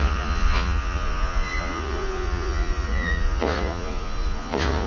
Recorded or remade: remade